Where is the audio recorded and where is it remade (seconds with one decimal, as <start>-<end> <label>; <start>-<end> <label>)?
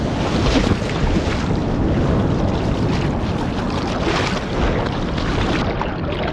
0.0-6.3 recorded